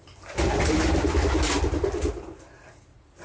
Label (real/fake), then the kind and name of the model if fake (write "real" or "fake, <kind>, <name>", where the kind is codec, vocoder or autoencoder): real